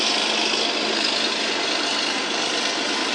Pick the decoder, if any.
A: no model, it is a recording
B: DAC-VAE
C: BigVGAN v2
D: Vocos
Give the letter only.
A